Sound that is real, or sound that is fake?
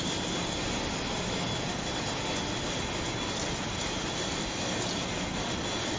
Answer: real